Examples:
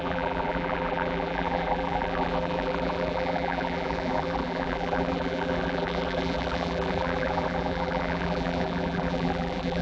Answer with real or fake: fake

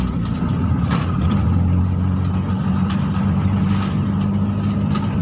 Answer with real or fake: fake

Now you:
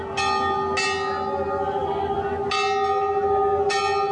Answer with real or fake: real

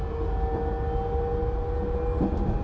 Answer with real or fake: real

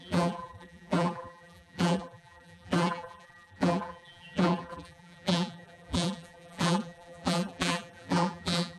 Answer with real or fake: fake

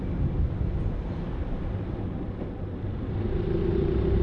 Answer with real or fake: real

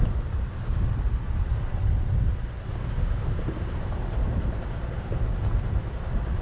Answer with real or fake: real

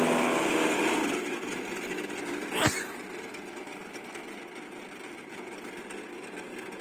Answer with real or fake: real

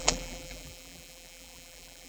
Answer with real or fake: fake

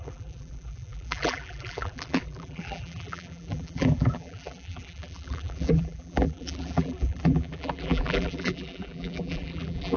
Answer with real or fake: fake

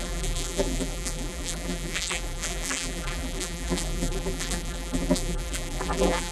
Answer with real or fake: fake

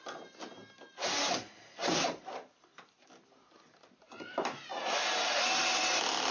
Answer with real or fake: real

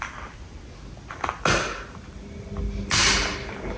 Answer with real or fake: real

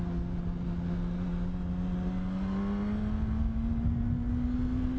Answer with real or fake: real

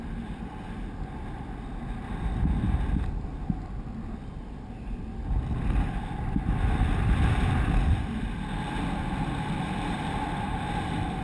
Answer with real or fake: real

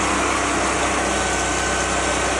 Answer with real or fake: real